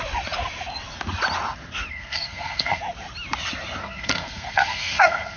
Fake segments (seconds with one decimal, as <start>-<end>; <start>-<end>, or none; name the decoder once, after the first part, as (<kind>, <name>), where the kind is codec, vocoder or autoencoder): 1.9-2.8 (codec, SNAC); 3.8-5.4